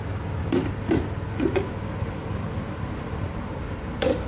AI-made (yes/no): yes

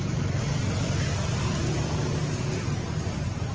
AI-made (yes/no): no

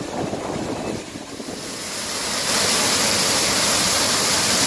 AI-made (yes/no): no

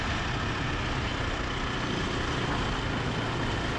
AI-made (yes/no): no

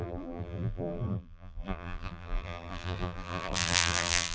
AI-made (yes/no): yes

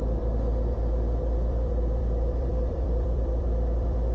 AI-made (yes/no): yes